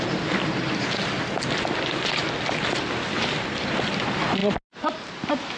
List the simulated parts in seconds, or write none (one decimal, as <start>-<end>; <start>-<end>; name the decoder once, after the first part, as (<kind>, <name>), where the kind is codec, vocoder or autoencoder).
none